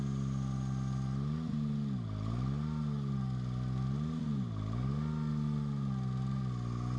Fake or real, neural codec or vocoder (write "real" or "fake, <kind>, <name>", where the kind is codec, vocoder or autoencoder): real